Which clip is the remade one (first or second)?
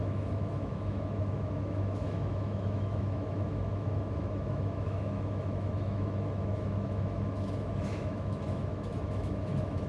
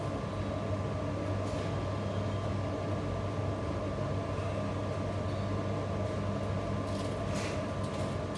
first